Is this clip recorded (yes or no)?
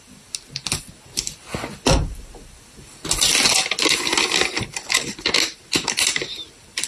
yes